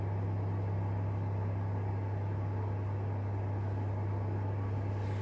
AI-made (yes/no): no